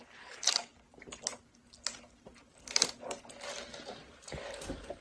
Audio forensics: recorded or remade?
recorded